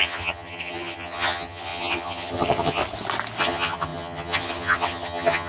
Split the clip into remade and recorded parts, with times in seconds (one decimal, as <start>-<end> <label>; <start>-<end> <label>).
0.0-2.8 remade; 2.8-3.4 recorded; 3.4-5.5 remade